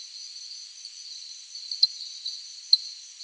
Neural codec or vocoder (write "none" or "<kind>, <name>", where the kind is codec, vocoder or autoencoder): vocoder, BigVGAN v2